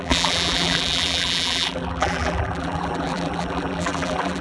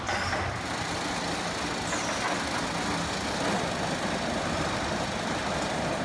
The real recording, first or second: second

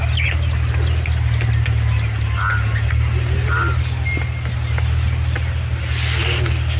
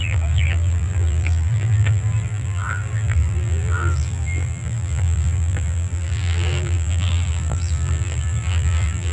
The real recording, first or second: first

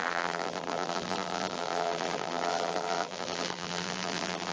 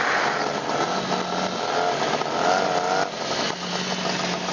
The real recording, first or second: second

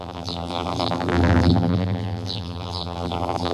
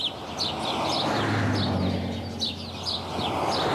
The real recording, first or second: second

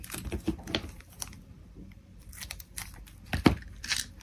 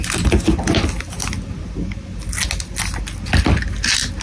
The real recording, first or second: second